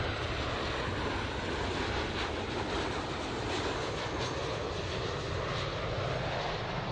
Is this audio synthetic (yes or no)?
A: no